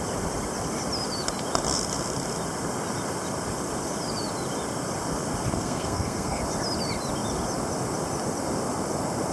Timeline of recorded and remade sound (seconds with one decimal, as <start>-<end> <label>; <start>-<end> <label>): 0.0-5.5 recorded; 5.5-6.4 remade; 6.4-9.3 recorded